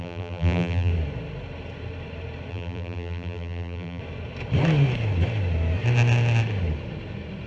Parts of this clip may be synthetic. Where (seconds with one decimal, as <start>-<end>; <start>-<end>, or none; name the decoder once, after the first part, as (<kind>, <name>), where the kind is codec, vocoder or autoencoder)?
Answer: 0.0-0.9 (vocoder, BigVGAN v2); 2.5-4.0